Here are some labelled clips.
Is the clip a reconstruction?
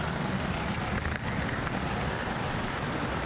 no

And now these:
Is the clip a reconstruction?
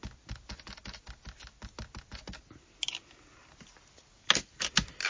no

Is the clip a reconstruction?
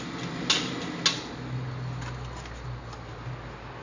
no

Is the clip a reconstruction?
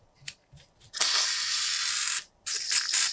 no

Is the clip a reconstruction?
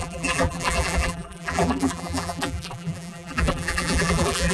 yes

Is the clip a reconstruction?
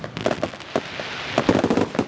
no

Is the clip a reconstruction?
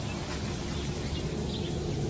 no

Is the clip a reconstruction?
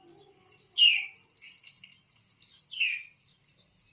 no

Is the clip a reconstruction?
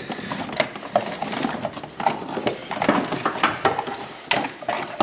no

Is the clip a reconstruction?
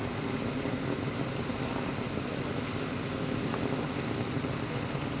no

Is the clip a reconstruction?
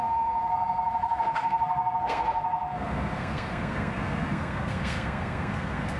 yes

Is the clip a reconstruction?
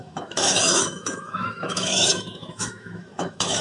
yes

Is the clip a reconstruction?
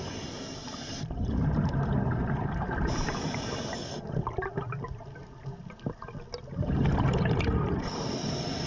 no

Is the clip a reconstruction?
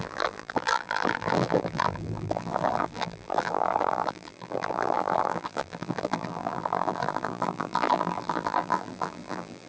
yes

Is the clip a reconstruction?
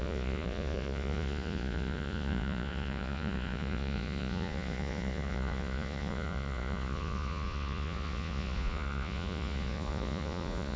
yes